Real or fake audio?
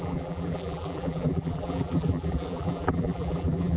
fake